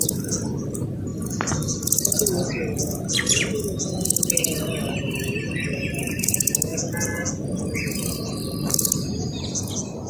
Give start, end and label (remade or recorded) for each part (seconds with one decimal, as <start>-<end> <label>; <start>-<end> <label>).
0.0-10.1 recorded